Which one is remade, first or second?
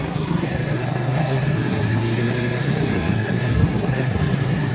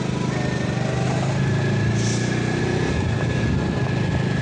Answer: first